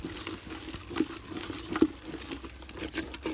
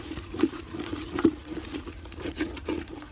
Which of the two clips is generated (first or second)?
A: second